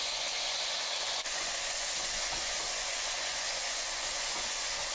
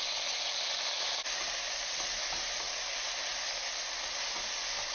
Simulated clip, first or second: first